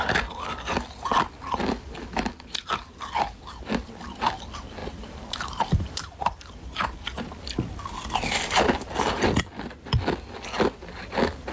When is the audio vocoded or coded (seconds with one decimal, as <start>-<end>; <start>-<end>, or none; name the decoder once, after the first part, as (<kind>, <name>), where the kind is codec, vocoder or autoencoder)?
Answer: 4.8-6.2 (vocoder, BigVGAN v2)